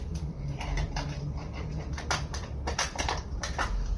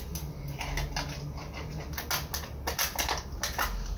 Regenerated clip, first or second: first